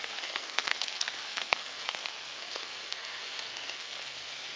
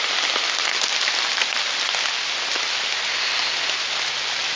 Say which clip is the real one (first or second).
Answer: second